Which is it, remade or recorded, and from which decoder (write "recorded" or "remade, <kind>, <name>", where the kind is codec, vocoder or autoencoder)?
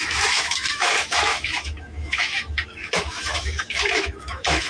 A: remade, autoencoder, DAC-VAE